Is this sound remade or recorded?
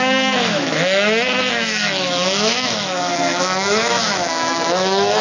remade